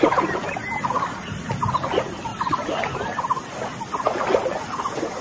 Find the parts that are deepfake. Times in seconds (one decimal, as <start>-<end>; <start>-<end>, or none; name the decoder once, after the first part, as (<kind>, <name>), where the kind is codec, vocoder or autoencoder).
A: none